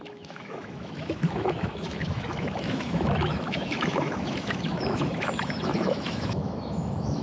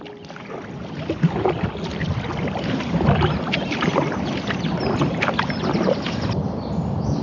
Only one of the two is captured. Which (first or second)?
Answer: second